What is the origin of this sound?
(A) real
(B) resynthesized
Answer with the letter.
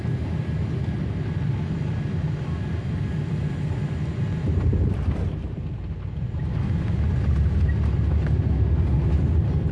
A